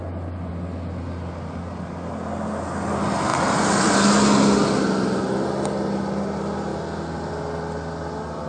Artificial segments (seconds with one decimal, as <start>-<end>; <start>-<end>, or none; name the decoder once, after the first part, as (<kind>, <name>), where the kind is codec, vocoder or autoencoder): none